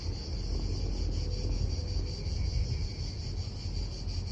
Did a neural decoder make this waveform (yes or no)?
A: no